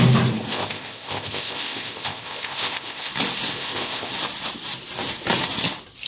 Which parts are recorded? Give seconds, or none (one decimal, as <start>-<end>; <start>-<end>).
0.0-0.5; 3.1-3.5; 4.1-6.1